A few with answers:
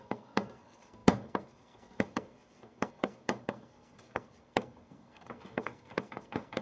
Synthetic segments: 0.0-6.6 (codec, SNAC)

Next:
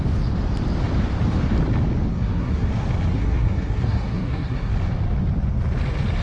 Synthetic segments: 2.1-2.7 (codec, SNAC); 3.1-4.7

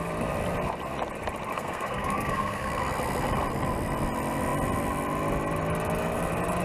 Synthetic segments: 1.5-2.8 (codec, SNAC)